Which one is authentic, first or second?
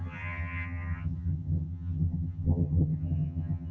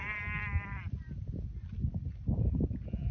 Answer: second